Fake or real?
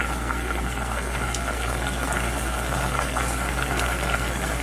fake